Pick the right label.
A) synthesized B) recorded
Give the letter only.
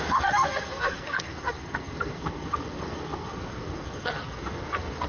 A